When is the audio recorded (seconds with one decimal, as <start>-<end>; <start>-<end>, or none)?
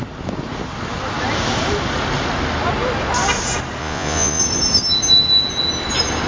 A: 0.0-3.8; 4.4-6.3